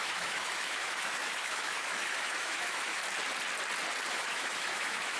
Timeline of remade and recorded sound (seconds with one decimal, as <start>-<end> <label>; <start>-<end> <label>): 0.0-3.0 remade; 3.0-4.1 recorded; 4.1-5.2 remade